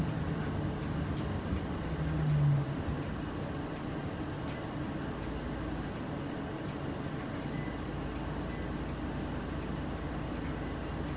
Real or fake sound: real